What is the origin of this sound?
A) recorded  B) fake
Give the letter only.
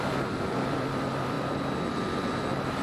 B